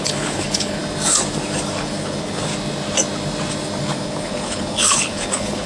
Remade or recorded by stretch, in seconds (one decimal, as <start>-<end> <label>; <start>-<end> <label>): 0.0-0.8 remade; 0.8-1.8 recorded; 1.8-2.5 remade; 2.5-3.8 recorded; 3.8-5.7 remade